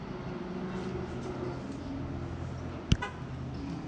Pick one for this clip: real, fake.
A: real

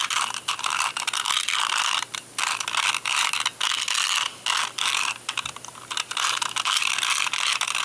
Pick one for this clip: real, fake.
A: real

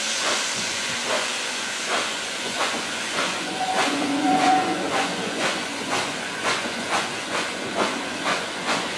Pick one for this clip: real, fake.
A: fake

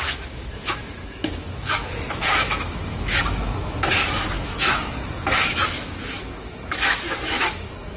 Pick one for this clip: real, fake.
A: fake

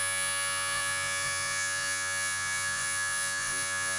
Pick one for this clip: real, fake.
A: fake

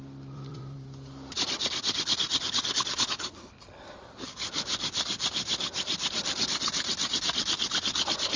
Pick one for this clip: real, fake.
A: fake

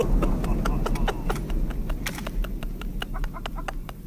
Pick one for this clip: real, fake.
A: real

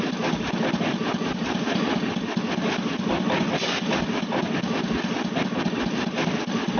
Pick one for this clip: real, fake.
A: real